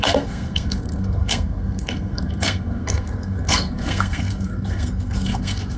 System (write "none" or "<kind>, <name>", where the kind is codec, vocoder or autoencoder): codec, SNAC